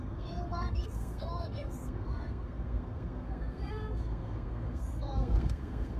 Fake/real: fake